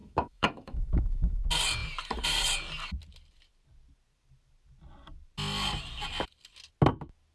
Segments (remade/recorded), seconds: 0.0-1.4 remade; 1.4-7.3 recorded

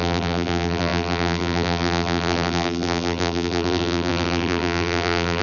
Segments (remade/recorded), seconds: 0.0-5.4 remade

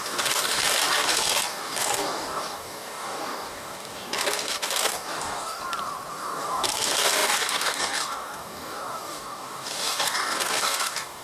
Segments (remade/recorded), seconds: 0.0-5.6 remade; 5.6-6.1 recorded; 6.1-11.2 remade

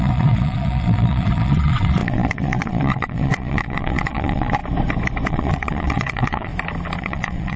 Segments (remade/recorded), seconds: 0.0-4.6 remade; 4.6-5.3 recorded; 5.3-6.5 remade; 6.5-7.0 recorded; 7.0-7.6 remade

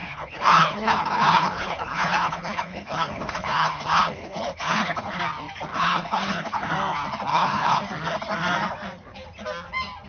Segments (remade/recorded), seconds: 0.0-5.2 remade; 5.2-5.7 recorded; 5.7-6.7 remade; 6.7-7.3 recorded; 7.3-7.8 remade; 7.8-10.1 recorded